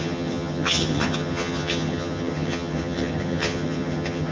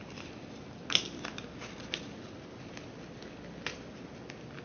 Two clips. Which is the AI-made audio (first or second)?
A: first